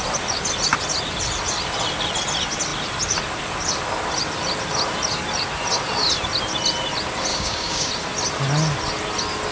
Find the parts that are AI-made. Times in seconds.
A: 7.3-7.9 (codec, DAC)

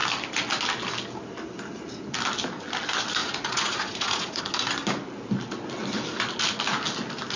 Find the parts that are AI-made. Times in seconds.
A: 3.2-4.4 (vocoder, Vocos)